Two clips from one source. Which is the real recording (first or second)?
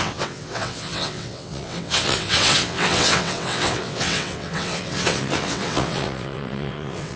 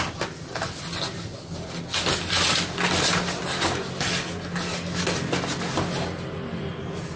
second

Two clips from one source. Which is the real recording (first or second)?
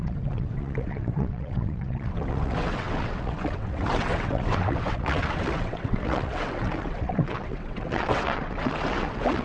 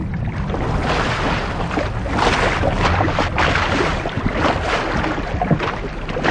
second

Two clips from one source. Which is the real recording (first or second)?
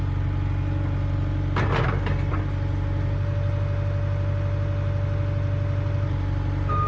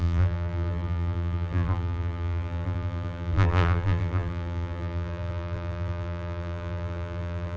first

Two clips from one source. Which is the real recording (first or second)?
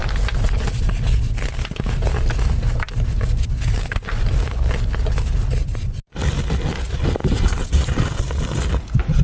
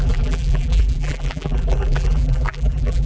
first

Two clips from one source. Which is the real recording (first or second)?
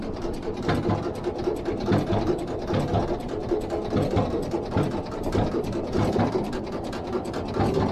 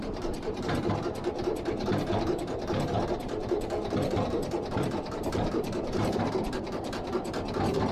first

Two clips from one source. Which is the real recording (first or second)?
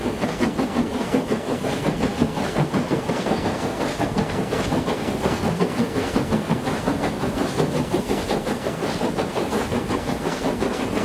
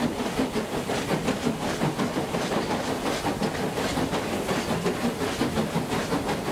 second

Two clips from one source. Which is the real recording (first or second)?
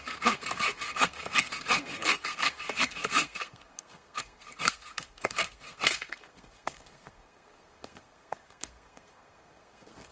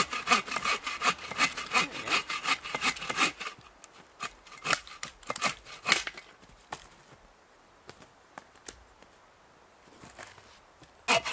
second